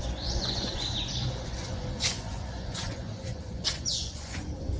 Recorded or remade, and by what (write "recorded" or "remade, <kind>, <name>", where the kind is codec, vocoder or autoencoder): remade, vocoder, Vocos